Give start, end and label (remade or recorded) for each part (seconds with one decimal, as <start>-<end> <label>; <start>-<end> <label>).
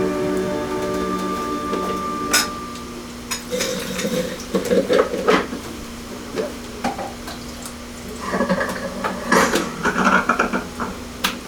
0.0-3.7 recorded; 3.7-6.5 remade; 6.5-9.8 recorded; 9.8-10.9 remade; 10.9-11.5 recorded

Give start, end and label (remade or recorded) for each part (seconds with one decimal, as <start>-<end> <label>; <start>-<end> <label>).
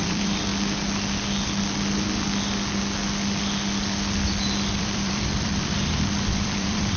0.0-0.5 remade; 0.5-4.7 recorded; 4.7-7.0 remade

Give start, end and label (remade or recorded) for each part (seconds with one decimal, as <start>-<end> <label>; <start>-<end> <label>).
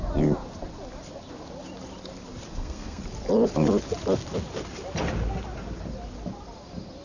0.0-2.5 recorded; 2.5-3.0 remade; 3.0-7.0 recorded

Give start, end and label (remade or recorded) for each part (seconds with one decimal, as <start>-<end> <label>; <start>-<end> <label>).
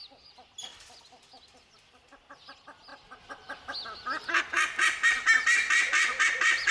0.0-6.7 recorded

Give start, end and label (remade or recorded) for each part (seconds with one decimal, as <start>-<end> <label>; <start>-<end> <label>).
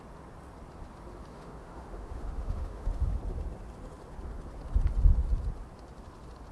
0.0-1.3 recorded; 1.3-3.2 remade; 3.2-6.5 recorded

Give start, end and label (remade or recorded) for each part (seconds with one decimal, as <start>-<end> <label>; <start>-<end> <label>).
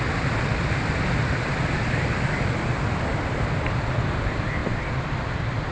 0.0-5.7 recorded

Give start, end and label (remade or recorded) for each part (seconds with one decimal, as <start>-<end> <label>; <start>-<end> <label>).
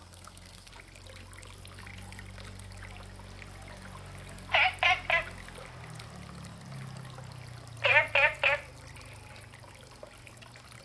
0.0-0.7 remade; 0.7-10.8 recorded